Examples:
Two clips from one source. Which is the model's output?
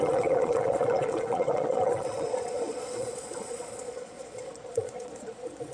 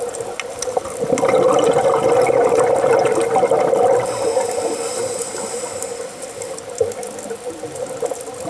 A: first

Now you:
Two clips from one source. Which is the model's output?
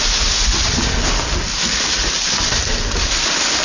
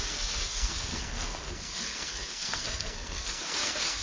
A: second